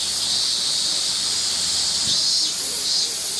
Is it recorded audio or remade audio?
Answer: recorded